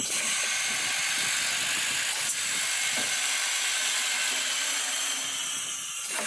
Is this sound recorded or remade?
recorded